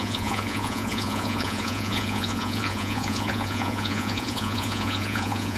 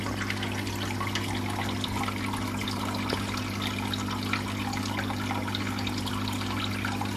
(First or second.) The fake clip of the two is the first